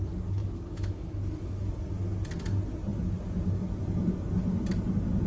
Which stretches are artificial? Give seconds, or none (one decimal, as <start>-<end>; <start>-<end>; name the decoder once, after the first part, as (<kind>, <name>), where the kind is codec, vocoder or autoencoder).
0.4-1.7 (autoencoder, DAC-VAE)